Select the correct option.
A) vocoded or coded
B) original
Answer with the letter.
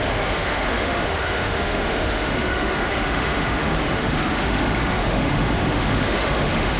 A